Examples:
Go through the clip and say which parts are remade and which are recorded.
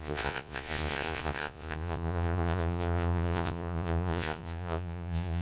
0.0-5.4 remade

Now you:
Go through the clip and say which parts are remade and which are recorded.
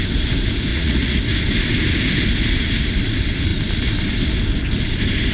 0.0-0.7 recorded; 0.7-1.2 remade; 1.2-5.3 recorded